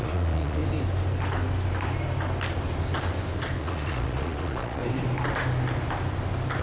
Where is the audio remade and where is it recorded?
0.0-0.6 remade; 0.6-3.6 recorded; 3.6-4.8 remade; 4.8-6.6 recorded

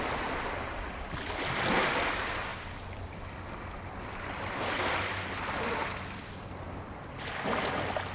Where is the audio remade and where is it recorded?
0.0-8.1 recorded

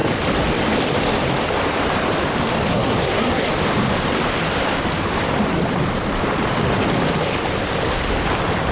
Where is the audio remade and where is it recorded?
0.0-2.7 recorded; 2.7-3.5 remade; 3.5-8.7 recorded

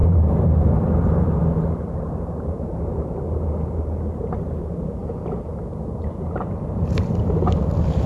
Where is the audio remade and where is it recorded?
0.0-5.0 remade; 5.0-5.9 recorded; 5.9-8.1 remade

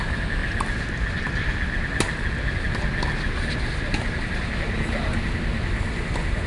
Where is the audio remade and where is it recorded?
0.0-6.5 recorded

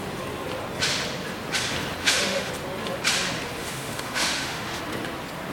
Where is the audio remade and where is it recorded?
0.0-2.0 recorded; 2.0-2.5 remade; 2.5-3.6 recorded; 3.6-4.8 remade; 4.8-5.5 recorded

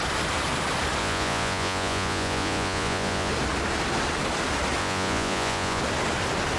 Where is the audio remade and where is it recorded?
0.0-1.0 recorded; 1.0-3.3 remade; 3.3-4.8 recorded; 4.8-5.8 remade; 5.8-6.6 recorded